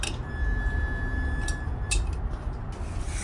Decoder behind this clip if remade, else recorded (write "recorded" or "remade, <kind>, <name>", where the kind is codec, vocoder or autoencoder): recorded